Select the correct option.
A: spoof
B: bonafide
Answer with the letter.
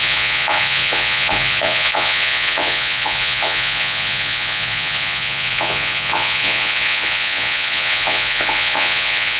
A